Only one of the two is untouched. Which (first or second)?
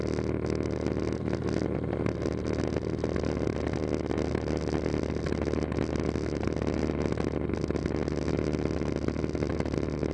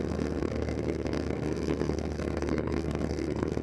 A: first